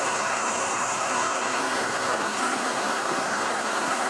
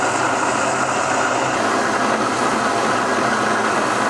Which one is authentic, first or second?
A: second